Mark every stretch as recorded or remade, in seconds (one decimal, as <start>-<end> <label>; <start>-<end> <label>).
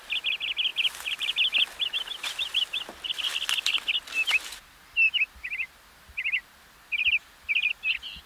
0.0-8.3 recorded